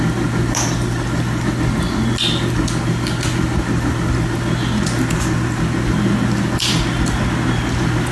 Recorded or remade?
recorded